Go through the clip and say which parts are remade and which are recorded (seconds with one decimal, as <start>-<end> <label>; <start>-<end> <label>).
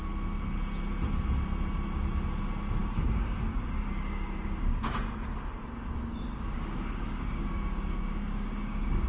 0.0-2.8 recorded; 2.8-4.8 remade; 4.8-5.6 recorded; 5.6-9.1 remade